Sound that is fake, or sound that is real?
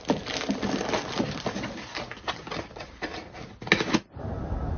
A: real